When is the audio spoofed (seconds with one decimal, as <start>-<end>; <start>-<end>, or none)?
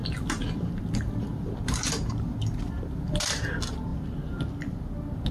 0.0-3.2